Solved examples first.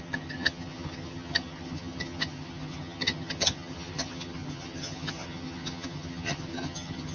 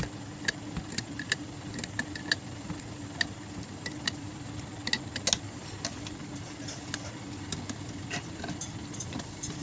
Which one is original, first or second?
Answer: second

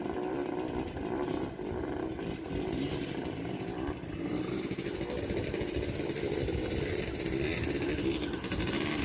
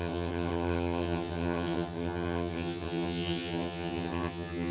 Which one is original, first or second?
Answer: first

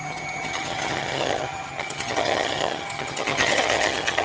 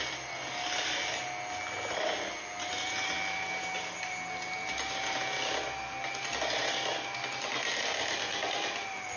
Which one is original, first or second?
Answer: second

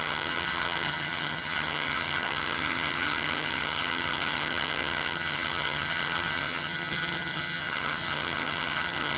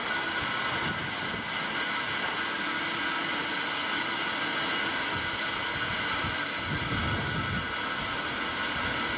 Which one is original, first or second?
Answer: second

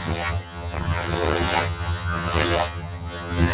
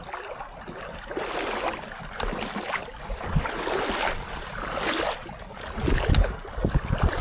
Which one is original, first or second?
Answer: second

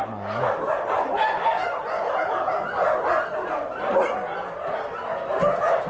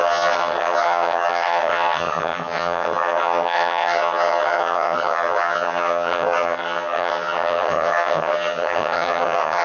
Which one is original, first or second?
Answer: first